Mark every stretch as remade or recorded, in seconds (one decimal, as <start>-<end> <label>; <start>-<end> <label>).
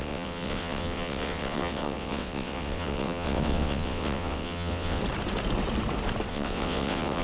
0.0-5.0 remade; 5.0-6.3 recorded; 6.3-7.2 remade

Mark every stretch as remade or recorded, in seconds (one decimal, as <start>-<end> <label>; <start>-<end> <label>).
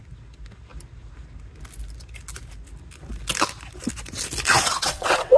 0.0-4.5 recorded; 4.5-5.4 remade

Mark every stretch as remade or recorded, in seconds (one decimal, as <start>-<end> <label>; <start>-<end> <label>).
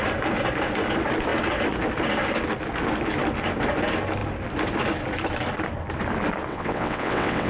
0.0-6.5 recorded; 6.5-7.5 remade